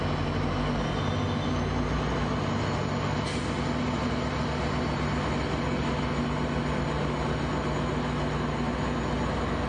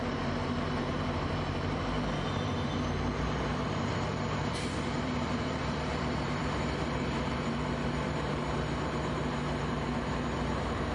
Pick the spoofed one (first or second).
second